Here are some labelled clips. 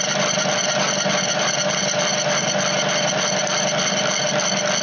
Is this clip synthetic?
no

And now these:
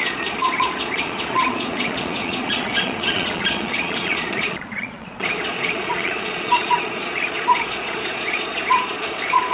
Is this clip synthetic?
yes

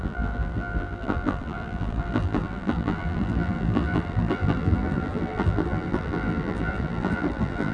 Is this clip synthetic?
yes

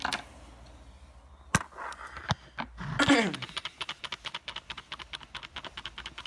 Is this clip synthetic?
no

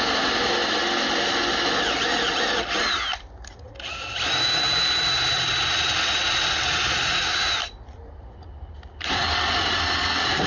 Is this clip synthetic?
no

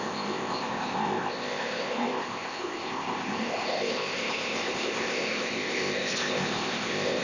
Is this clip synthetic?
yes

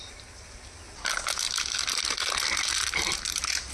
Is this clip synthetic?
no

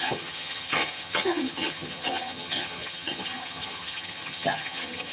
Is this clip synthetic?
yes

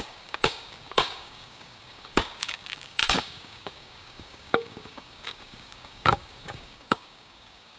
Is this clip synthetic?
yes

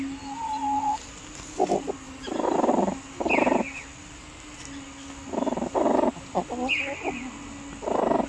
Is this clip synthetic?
no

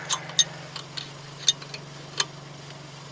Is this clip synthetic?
no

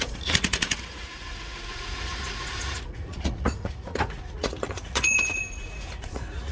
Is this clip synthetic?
yes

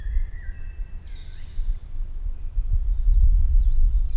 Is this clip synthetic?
no